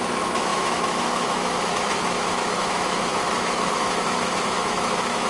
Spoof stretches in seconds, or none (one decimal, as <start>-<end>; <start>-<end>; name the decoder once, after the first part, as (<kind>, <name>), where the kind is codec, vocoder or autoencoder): 0.0-5.3 (autoencoder, DAC-VAE)